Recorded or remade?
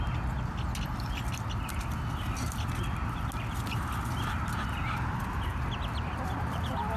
recorded